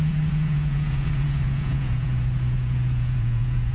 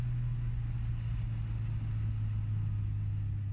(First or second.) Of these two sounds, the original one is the second